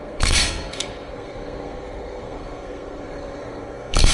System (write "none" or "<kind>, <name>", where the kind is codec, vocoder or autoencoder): codec, SNAC